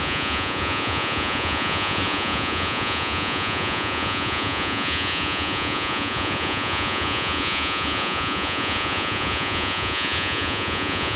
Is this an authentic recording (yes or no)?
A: no